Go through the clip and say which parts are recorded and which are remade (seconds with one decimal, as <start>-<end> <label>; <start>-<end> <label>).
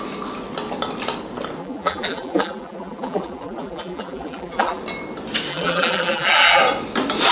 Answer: 0.0-1.6 recorded; 1.6-4.8 remade; 4.8-5.5 recorded; 5.5-6.6 remade; 6.6-7.3 recorded